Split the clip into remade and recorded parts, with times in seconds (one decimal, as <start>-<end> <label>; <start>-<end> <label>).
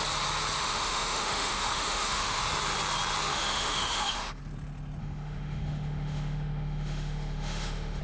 0.0-0.6 recorded; 0.6-2.4 remade; 2.4-3.3 recorded; 3.3-4.4 remade; 4.4-5.0 recorded; 5.0-8.0 remade